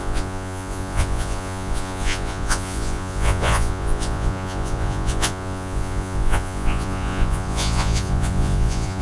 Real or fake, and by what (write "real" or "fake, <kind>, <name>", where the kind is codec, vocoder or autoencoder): fake, vocoder, Vocos